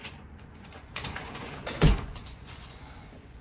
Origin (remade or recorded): remade